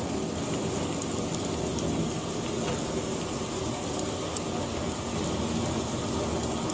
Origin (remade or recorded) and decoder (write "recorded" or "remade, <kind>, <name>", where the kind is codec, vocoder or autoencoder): recorded